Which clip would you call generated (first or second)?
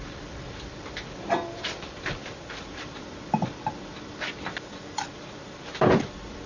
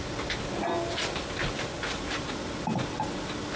first